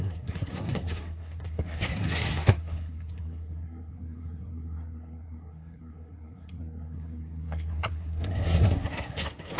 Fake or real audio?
fake